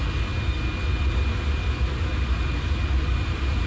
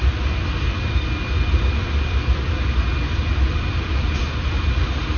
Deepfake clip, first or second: second